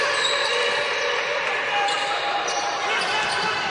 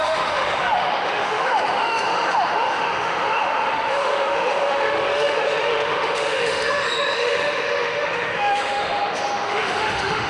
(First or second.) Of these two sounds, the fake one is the second